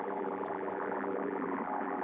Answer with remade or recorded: remade